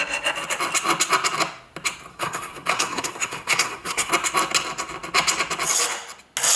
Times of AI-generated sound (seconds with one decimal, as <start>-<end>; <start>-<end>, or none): 2.1-4.1